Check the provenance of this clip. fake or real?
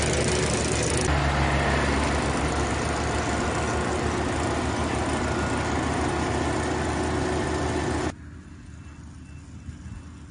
real